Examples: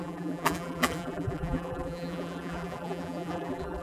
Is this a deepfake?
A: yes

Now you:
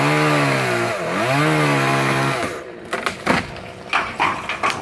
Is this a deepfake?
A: no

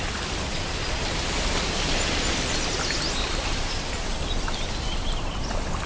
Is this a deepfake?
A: yes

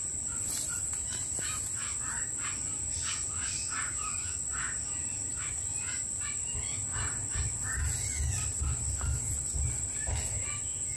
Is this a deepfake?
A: no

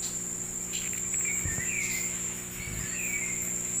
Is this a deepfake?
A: no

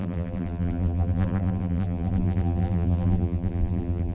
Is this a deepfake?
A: yes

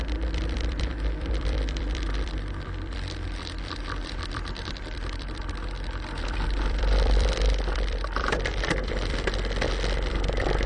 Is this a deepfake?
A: yes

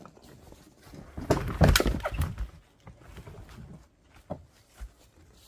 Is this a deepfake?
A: no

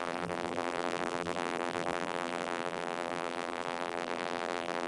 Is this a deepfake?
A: yes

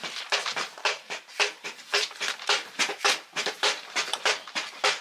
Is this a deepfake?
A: yes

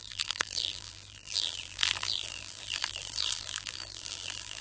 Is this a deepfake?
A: yes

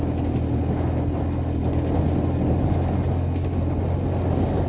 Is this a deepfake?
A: no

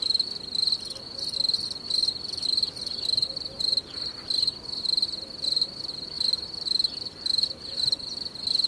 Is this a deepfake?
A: no